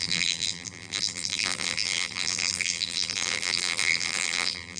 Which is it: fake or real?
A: fake